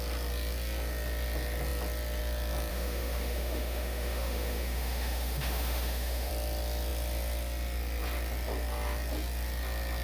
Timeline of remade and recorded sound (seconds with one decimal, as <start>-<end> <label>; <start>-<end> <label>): 0.0-2.7 recorded; 2.7-6.3 remade; 6.3-10.0 recorded